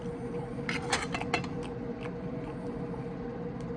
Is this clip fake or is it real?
real